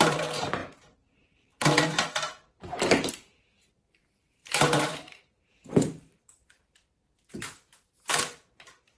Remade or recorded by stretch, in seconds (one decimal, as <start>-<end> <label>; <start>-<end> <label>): 0.0-9.0 remade